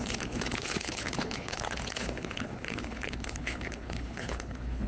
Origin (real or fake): fake